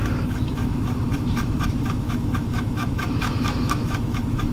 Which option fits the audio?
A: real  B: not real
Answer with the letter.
B